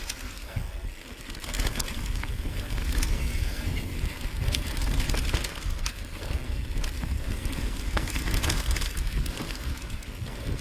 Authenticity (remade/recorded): remade